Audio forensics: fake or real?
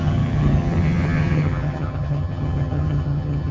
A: fake